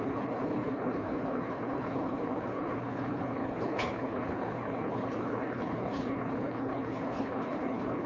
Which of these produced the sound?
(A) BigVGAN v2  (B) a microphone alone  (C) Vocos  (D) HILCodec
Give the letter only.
D